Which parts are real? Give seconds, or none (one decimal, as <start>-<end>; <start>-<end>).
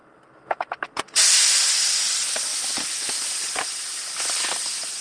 1.2-2.5; 4.0-5.0